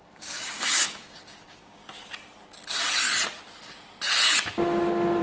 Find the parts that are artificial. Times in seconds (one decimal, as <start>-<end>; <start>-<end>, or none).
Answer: 0.0-1.8